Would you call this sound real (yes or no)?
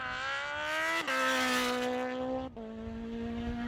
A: yes